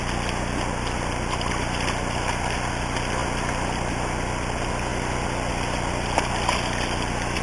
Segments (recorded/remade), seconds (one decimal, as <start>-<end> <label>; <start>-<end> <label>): 0.0-7.4 recorded